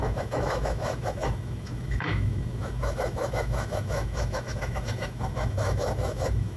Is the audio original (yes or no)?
no